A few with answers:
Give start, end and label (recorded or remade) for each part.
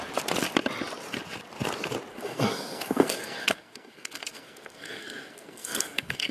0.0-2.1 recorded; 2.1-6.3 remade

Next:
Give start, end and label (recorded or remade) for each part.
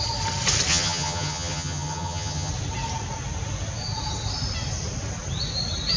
0.0-0.7 recorded; 0.7-2.5 remade; 2.5-6.0 recorded